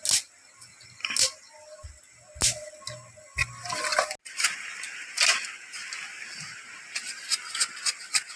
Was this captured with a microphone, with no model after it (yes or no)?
yes